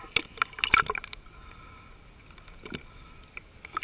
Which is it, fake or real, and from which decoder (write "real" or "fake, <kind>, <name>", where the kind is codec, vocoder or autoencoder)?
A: real